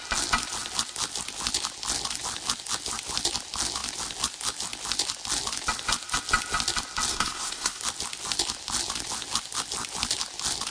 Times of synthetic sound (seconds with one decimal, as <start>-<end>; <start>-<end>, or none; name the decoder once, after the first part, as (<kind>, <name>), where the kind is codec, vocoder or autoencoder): 7.1-7.8 (codec, SNAC)